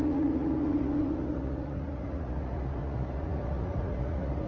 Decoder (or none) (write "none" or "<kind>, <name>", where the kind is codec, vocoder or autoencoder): vocoder, Vocos